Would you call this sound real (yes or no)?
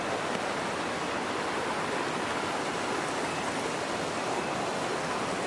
yes